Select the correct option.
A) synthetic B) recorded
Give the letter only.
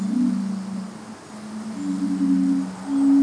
B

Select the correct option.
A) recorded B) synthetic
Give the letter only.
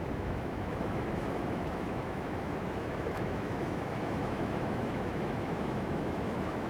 B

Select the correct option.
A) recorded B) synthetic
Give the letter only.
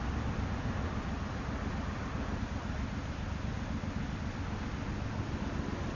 A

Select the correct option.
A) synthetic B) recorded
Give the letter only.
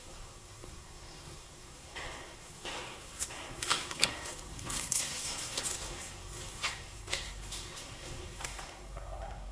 A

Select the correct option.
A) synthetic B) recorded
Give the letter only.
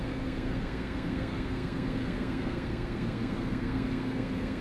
A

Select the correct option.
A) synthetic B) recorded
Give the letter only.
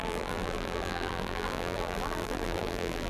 A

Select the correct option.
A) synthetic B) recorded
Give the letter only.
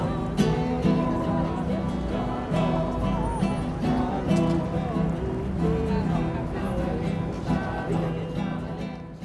B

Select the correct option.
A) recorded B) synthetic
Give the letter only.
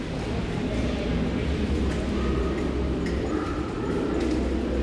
A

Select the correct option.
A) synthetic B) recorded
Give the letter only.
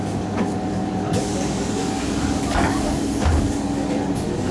A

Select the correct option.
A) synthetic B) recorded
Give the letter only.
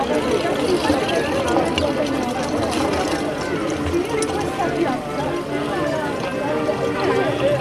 B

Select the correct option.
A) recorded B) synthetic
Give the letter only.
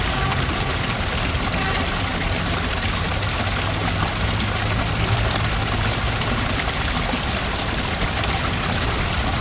A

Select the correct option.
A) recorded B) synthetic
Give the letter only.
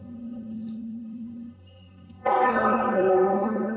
B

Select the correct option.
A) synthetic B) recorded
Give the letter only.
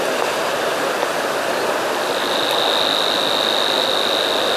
B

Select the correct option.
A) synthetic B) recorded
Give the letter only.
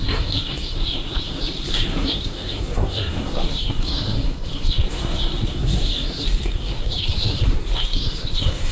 A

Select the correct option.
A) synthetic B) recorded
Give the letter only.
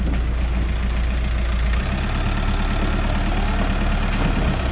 B